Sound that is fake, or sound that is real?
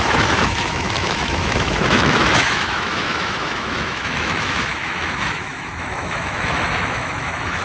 fake